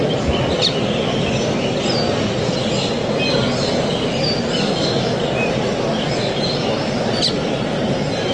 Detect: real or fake real